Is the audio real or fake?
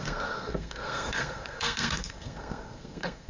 fake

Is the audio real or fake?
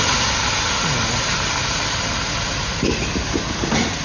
real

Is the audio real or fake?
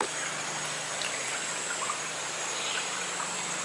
real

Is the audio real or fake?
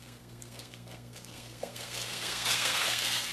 fake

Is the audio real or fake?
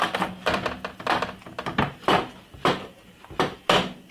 real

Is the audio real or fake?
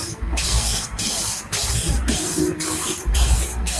fake